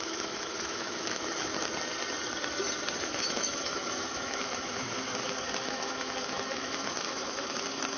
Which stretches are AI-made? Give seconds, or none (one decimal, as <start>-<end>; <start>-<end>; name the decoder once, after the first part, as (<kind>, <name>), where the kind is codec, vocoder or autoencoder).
0.0-1.5 (autoencoder, DAC-VAE); 3.0-8.0